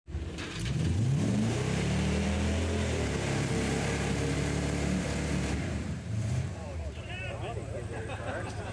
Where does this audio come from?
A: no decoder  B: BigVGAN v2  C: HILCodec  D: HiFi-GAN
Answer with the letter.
B